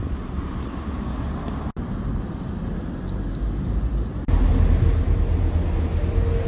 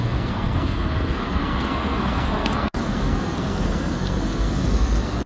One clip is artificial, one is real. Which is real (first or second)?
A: first